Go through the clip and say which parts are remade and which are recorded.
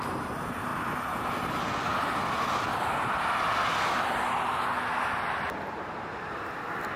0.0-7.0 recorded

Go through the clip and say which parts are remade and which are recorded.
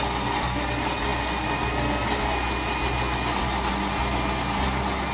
0.0-5.1 recorded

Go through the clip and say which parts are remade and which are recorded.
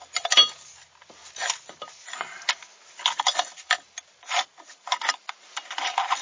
0.0-6.2 recorded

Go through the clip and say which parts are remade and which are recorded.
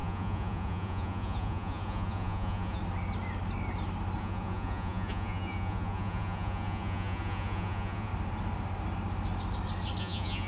0.0-2.8 remade; 2.8-4.2 recorded; 4.2-8.1 remade; 8.1-10.0 recorded; 10.0-10.5 remade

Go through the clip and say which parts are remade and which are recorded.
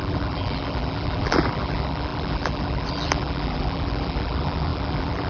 0.0-5.3 remade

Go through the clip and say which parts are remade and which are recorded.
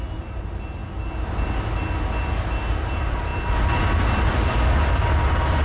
0.0-5.6 recorded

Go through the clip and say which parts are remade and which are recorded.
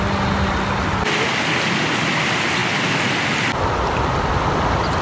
0.0-5.0 recorded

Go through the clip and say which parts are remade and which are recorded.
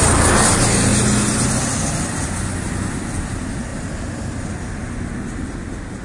0.0-6.0 recorded